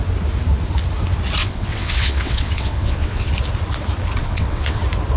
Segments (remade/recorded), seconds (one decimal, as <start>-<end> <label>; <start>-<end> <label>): 0.0-1.4 recorded; 1.4-3.3 remade; 3.3-4.2 recorded; 4.2-4.8 remade; 4.8-5.2 recorded